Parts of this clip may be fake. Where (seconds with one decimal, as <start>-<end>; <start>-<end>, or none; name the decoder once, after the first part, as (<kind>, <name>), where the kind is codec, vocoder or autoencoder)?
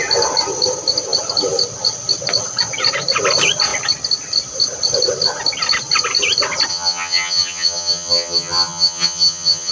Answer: 6.7-9.7 (vocoder, HiFi-GAN)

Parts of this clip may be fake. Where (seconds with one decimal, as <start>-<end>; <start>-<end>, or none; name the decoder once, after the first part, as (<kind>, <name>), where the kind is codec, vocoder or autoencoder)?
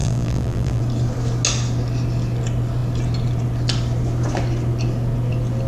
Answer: 0.0-0.8 (vocoder, BigVGAN v2)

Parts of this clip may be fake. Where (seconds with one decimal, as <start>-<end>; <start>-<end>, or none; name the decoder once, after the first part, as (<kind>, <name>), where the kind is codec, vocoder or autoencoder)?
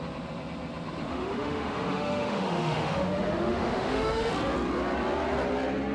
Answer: 1.1-4.3 (autoencoder, DAC-VAE)